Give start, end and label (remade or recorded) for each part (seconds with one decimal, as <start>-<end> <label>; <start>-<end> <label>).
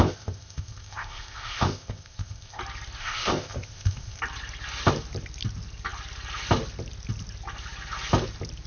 0.0-2.6 remade; 2.6-3.0 recorded; 3.0-4.2 remade; 4.2-8.7 recorded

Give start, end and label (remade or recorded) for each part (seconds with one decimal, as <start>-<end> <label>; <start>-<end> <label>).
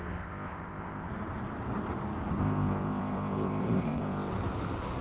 0.0-1.1 remade; 1.1-2.4 recorded; 2.4-4.3 remade; 4.3-5.0 recorded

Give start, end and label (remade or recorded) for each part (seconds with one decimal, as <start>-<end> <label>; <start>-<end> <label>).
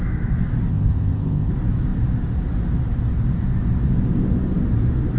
0.0-0.7 recorded; 0.7-1.5 remade; 1.5-5.2 recorded